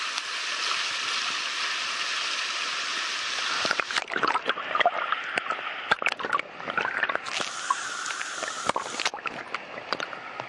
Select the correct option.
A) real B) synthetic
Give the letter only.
A